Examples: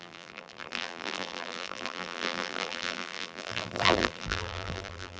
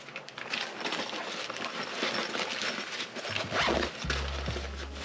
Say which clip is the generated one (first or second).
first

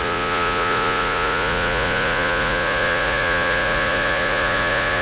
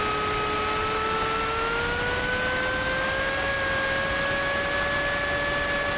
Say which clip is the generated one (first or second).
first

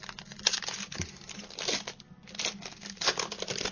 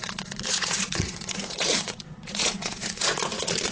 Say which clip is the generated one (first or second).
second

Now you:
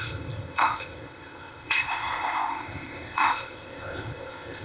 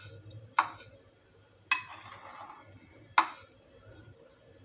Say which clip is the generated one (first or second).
first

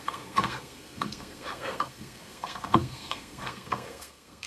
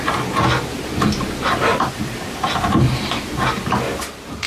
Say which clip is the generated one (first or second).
first